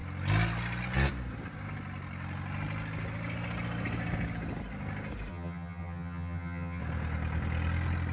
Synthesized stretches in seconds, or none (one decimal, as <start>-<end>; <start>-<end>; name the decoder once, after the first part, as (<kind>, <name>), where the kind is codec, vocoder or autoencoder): 5.3-6.8 (vocoder, HiFi-GAN)